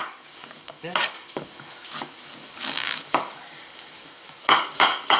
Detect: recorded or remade remade